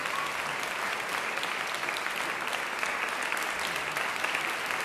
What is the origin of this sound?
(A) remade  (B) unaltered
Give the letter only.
B